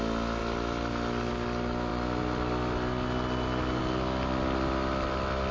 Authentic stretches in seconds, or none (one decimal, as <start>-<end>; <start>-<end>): 0.0-5.5